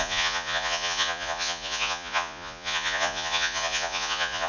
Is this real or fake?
fake